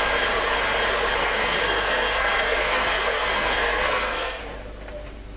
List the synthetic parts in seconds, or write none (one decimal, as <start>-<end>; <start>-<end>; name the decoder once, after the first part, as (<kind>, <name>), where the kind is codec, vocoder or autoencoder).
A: 1.2-4.4 (codec, SNAC)